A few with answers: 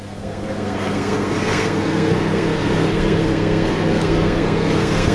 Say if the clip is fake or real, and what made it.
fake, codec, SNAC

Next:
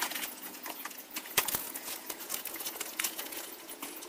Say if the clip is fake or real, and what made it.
fake, vocoder, Vocos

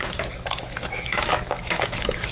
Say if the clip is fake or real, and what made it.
fake, autoencoder, DAC-VAE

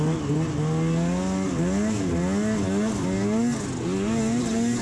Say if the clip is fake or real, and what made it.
real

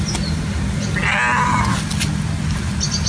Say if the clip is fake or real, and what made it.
real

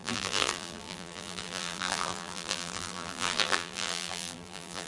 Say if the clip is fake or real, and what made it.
fake, vocoder, BigVGAN v2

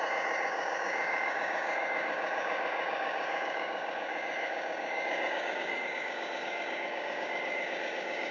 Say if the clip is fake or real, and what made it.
fake, codec, DAC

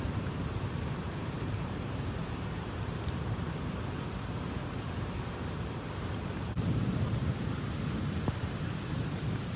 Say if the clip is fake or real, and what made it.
fake, vocoder, BigVGAN v2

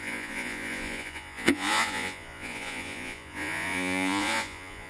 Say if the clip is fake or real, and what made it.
fake, vocoder, Vocos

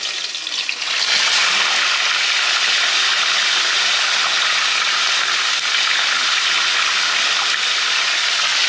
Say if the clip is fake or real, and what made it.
real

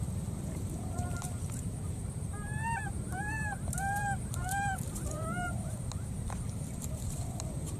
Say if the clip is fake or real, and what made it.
fake, vocoder, BigVGAN v2